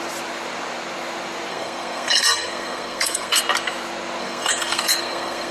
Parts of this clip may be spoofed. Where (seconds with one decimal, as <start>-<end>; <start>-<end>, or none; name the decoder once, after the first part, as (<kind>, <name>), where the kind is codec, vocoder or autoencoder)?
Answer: 1.5-3.4 (codec, SNAC); 4.2-5.5